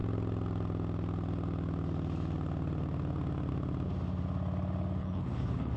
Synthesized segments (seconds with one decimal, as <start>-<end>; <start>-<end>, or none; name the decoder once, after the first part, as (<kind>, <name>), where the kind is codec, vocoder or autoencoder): 5.0-5.8 (codec, HILCodec)